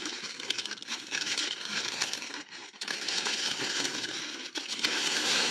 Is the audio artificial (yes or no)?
yes